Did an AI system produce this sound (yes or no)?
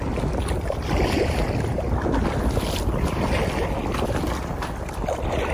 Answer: no